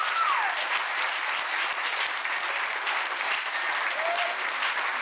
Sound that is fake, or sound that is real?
real